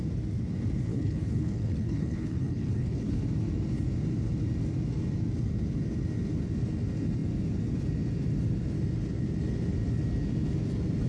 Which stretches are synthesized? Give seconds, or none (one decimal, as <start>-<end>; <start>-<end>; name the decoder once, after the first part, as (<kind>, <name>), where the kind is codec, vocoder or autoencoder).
0.9-3.2 (codec, HILCodec)